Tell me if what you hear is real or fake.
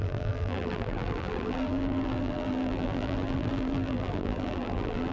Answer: fake